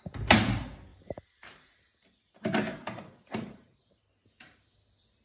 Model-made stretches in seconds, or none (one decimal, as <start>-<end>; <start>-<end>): 0.9-4.0